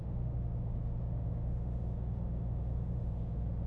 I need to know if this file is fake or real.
fake